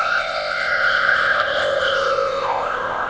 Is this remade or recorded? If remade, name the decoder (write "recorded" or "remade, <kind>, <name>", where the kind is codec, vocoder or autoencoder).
remade, codec, ZipCodec